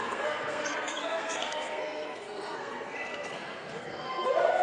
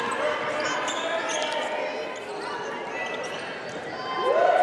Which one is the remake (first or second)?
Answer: first